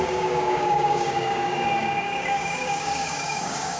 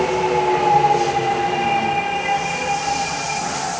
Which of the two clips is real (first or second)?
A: second